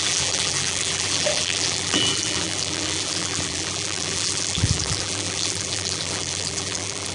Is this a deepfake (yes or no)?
yes